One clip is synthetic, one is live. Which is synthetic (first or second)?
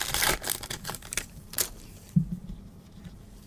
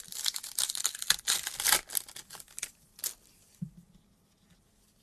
first